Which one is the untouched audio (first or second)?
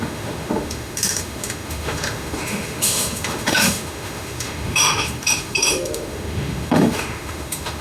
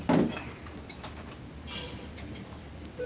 second